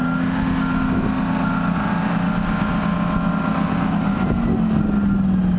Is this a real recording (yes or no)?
yes